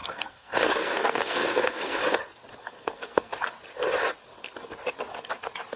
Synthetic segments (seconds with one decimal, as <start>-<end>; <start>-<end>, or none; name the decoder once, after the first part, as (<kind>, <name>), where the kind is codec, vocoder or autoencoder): 0.0-2.0 (codec, SNAC); 2.6-3.3